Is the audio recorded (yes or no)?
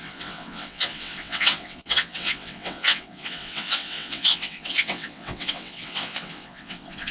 no